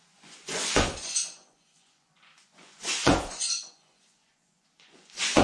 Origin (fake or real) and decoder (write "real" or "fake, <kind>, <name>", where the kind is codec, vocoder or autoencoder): fake, vocoder, Vocos